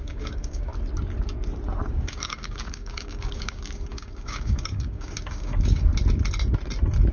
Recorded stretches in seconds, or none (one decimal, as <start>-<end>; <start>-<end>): 0.7-1.9; 5.9-7.1